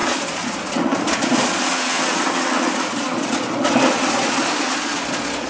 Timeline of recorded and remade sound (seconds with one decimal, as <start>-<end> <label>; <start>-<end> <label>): 0.0-5.5 remade